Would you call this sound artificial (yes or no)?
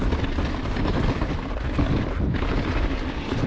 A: no